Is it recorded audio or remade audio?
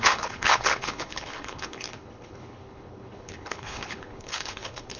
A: remade